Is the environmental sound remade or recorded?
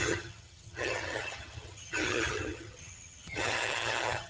remade